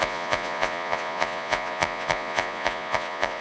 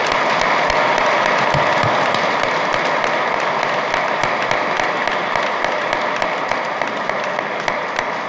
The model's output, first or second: first